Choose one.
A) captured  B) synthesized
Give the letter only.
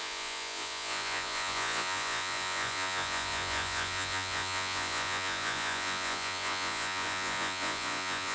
B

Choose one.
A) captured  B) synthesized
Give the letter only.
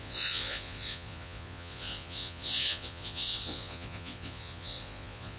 B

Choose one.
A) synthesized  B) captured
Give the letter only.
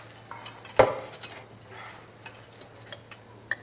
B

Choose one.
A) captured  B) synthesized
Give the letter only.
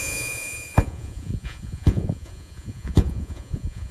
B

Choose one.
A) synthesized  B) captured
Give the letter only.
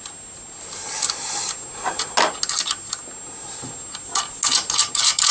B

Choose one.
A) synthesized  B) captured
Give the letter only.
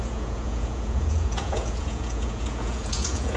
A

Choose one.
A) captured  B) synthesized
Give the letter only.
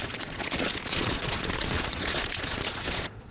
B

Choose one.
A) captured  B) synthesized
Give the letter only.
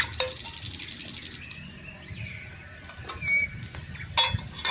A